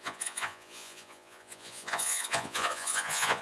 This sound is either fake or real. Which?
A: fake